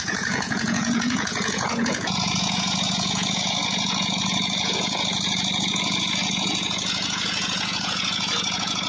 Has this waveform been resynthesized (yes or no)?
yes